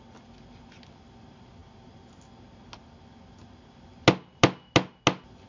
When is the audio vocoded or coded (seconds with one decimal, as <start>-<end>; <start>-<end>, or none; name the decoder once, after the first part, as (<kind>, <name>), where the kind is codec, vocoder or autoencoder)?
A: none